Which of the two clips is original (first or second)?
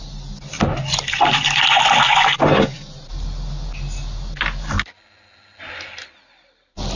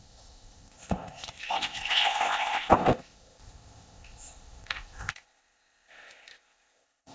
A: first